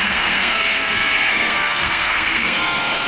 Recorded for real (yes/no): no